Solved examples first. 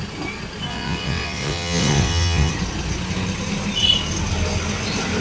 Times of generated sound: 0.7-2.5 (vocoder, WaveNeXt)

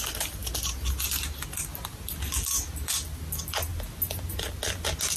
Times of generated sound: none